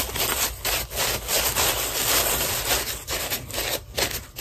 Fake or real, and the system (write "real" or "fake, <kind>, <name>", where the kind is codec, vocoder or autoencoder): real